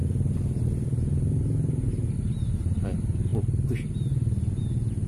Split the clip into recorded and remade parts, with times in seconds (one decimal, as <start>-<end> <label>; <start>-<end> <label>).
0.0-5.1 recorded